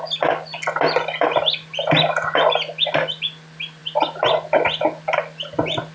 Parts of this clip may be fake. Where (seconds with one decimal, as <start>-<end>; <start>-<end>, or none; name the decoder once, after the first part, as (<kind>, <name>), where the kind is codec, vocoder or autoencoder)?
none